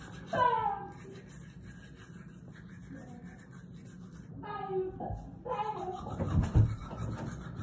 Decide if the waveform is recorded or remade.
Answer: recorded